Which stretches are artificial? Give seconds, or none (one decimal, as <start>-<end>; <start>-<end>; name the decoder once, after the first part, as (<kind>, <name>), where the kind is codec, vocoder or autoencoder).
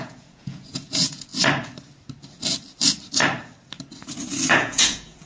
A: 0.0-1.3 (vocoder, Vocos); 4.5-5.3